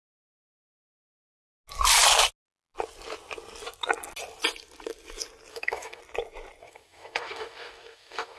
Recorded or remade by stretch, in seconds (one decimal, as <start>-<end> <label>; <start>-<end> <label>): 0.0-5.5 recorded; 5.5-6.0 remade; 6.0-6.6 recorded; 6.6-8.4 remade